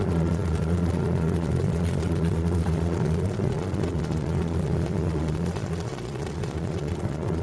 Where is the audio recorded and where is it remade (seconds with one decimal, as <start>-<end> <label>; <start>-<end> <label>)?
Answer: 0.0-7.4 remade